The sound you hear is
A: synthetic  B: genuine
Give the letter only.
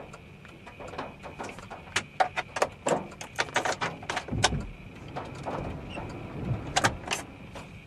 B